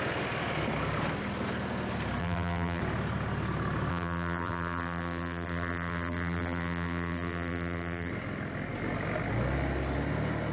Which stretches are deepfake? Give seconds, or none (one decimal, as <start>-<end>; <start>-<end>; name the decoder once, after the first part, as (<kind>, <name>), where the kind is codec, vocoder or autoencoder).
2.2-2.8 (vocoder, BigVGAN v2); 3.9-8.1